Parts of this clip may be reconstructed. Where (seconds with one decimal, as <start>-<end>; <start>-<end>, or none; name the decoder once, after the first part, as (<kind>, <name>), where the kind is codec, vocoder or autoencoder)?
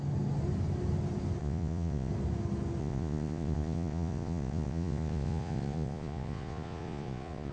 1.4-2.1 (vocoder, Vocos); 2.8-7.5